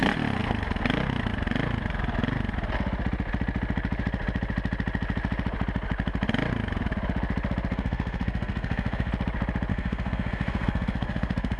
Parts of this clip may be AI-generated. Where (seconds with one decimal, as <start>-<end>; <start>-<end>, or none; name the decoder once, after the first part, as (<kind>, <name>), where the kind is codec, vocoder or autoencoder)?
7.7-9.1 (codec, SNAC); 9.7-11.6